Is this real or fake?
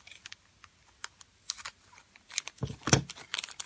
real